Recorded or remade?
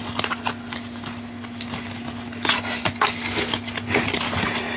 recorded